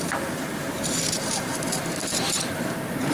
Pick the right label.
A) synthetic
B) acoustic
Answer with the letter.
A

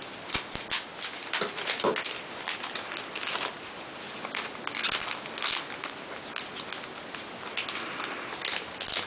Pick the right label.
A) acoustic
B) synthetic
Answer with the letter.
A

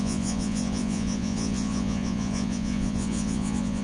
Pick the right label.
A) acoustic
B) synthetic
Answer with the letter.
B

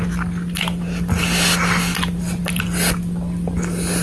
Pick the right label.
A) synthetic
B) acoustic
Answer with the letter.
B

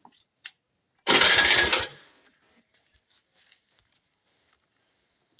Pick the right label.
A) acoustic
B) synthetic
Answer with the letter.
B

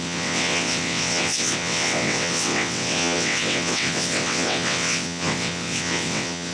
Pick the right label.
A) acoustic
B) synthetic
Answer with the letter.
B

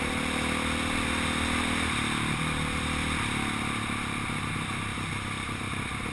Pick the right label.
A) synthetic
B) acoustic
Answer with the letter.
B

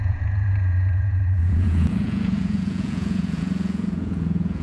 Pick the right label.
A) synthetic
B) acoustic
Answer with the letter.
A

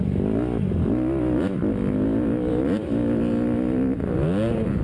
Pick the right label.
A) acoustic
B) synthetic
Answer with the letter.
A